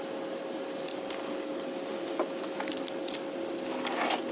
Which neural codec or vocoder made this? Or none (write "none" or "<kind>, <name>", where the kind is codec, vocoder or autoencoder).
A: none